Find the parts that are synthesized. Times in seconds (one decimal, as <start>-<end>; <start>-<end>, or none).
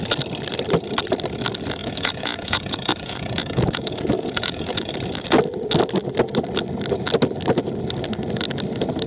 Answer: 1.8-4.9